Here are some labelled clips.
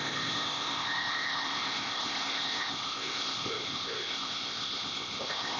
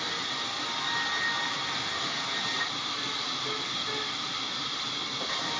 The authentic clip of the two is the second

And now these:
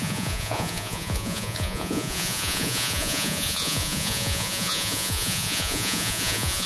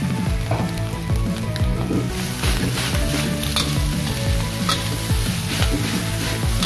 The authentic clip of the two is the second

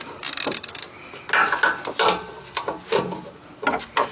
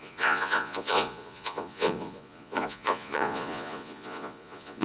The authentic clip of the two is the first